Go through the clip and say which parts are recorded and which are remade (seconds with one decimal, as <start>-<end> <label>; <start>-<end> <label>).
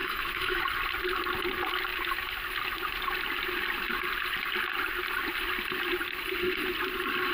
0.0-0.6 remade; 0.6-7.3 recorded